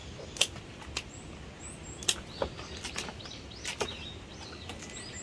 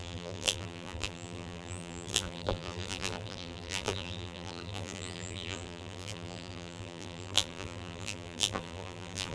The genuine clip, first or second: first